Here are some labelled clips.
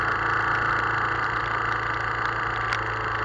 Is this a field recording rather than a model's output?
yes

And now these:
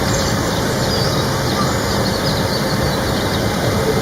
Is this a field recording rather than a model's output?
no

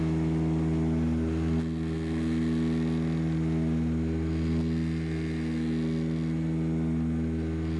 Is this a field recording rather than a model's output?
yes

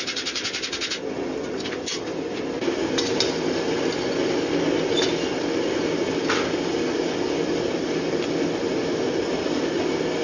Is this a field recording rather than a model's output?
yes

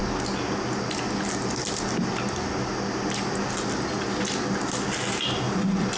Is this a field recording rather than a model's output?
yes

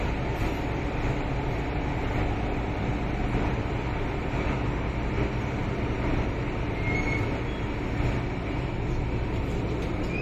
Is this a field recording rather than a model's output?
yes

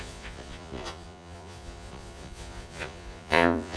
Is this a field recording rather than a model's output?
no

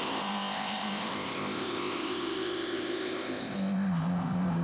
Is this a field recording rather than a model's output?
no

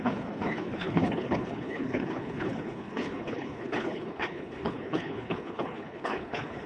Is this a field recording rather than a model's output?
no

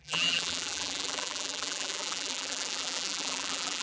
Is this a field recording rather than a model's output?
no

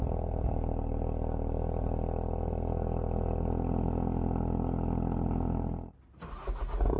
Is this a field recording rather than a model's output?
yes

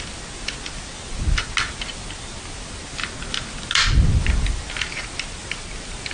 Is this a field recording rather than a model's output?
yes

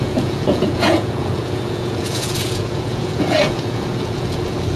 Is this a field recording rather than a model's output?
no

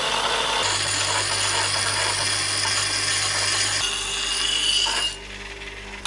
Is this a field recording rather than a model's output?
yes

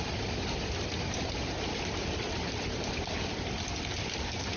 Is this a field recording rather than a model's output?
yes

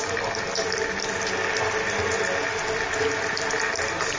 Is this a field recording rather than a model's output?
yes